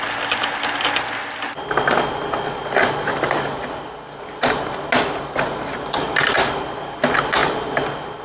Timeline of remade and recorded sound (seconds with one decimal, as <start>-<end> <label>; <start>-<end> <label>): 0.0-8.2 recorded